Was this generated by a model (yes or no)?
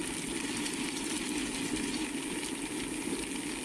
no